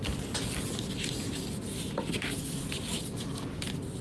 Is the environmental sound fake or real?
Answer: real